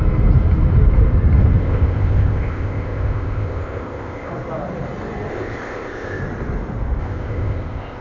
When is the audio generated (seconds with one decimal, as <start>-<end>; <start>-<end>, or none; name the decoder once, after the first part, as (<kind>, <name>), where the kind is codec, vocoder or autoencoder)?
1.6-4.3 (codec, ZipCodec); 5.3-6.2; 7.0-8.0